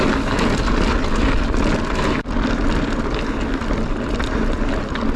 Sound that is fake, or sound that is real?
real